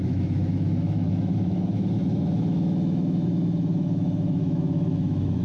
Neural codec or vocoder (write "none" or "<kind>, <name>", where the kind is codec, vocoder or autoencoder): autoencoder, DAC-VAE